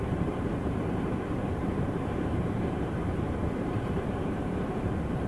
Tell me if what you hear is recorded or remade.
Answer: remade